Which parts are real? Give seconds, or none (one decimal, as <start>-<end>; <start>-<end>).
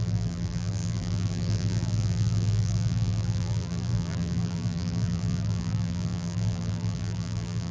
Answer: none